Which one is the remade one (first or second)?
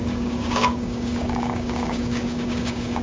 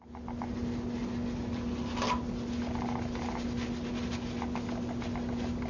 first